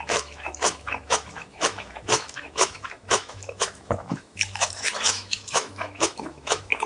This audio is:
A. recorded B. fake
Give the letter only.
B